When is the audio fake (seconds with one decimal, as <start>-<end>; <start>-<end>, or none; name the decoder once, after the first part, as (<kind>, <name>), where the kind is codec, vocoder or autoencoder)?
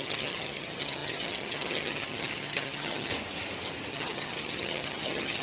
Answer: 0.0-3.1 (vocoder, HiFi-GAN); 3.9-5.4